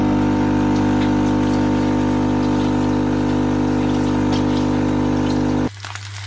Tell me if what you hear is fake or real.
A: real